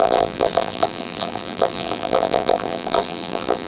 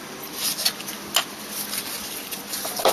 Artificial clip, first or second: first